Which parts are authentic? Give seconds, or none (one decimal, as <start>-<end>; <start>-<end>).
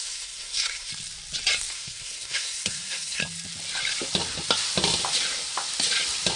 0.9-1.7; 3.2-6.4